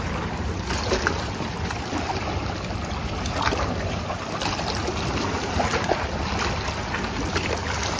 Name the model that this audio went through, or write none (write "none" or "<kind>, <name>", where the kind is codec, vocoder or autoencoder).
none